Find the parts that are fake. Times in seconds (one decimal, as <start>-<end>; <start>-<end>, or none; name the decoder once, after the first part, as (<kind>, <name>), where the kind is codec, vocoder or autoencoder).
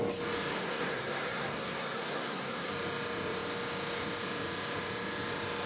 0.5-2.7 (codec, SNAC)